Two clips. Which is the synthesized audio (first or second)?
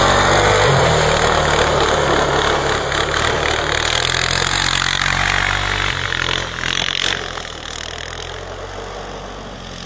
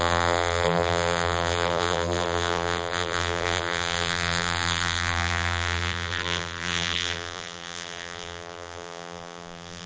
second